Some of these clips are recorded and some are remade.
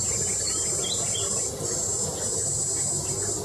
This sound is recorded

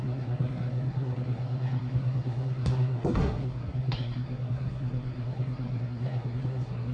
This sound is remade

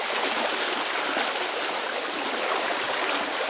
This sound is recorded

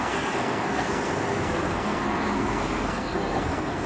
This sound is remade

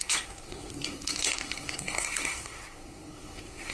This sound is remade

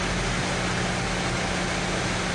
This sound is recorded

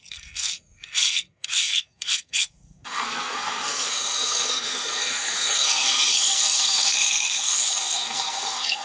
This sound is remade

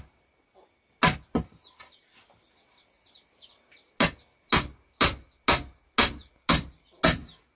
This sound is recorded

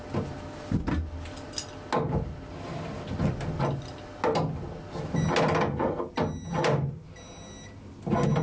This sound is recorded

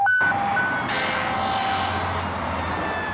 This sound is recorded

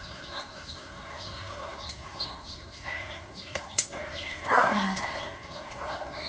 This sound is remade